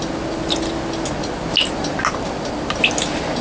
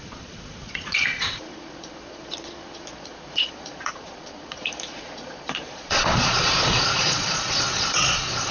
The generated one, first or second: second